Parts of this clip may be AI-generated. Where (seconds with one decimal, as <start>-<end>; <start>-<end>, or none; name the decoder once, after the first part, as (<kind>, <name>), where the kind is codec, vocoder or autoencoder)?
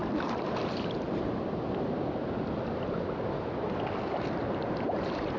4.4-5.4 (vocoder, BigVGAN v2)